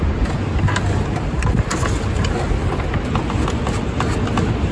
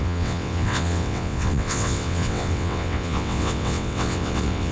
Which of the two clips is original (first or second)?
first